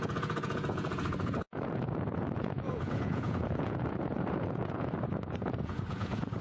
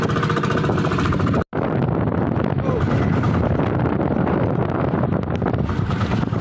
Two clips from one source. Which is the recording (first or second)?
second